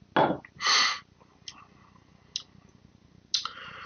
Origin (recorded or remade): recorded